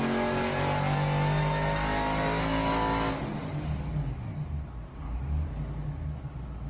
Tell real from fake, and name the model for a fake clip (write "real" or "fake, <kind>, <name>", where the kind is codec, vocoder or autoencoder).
real